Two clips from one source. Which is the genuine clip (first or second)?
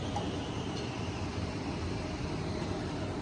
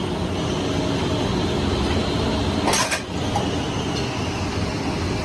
second